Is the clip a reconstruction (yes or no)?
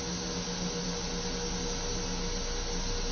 no